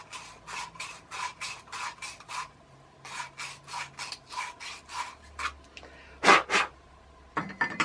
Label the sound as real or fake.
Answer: real